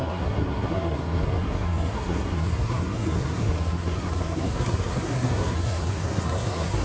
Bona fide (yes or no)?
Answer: no